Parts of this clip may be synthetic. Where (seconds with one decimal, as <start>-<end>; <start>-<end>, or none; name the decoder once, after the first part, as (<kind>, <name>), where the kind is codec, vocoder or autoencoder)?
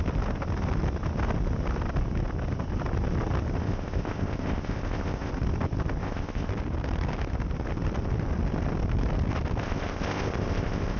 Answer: 3.6-5.3 (codec, ZipCodec); 6.0-6.5; 9.6-11.0